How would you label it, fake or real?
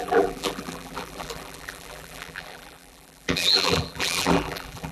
fake